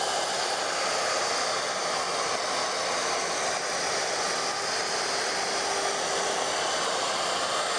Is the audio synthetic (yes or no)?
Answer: no